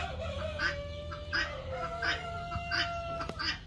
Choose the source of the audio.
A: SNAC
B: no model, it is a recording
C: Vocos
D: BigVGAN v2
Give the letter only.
B